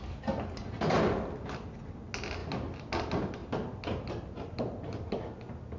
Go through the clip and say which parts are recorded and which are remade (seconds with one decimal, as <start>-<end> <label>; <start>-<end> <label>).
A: 0.0-5.8 recorded